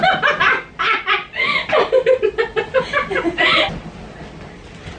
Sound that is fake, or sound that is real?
real